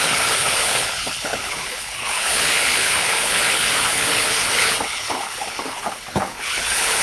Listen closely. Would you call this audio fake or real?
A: fake